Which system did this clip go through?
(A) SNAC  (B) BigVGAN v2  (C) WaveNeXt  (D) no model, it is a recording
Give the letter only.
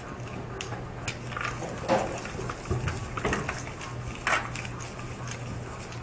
D